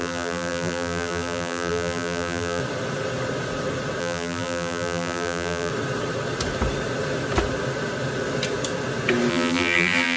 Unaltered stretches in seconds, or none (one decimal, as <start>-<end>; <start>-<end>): 2.6-4.0; 5.7-9.3